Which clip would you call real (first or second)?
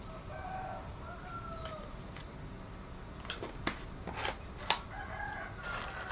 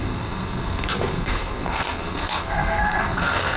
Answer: first